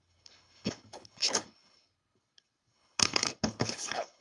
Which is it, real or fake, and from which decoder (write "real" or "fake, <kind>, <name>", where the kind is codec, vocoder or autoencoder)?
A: fake, codec, HILCodec